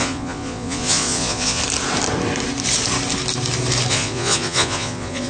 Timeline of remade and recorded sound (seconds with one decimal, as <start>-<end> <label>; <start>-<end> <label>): 0.0-1.6 remade; 1.6-3.9 recorded; 3.9-5.3 remade